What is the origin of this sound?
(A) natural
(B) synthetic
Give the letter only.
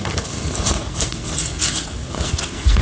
B